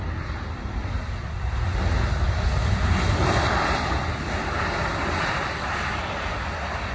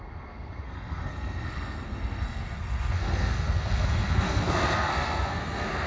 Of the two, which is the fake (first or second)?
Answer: second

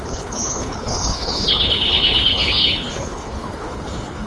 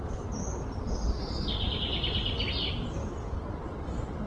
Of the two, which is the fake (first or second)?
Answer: first